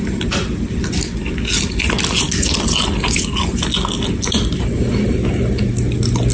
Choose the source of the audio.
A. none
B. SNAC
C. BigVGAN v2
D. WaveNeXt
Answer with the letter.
A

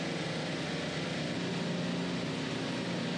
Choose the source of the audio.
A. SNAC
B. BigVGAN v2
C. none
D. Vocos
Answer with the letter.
C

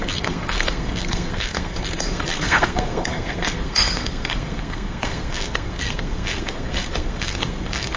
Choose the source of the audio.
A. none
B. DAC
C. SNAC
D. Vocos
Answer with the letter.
C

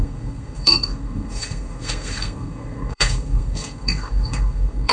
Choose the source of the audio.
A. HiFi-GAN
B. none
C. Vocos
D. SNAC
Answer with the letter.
D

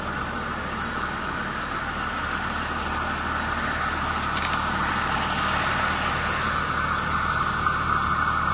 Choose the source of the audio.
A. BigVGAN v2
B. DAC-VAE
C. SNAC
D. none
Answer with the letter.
D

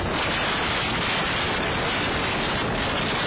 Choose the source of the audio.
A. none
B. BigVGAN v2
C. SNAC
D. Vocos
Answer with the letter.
A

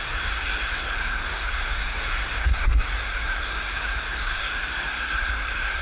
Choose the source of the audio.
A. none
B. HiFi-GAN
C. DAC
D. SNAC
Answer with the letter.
D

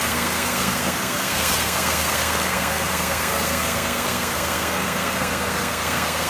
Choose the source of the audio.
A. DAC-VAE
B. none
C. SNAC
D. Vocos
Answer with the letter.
C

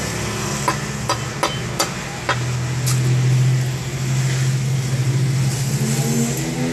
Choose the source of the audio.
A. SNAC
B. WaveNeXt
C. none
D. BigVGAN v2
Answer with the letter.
C